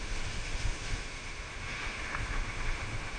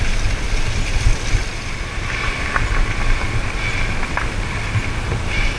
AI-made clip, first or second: first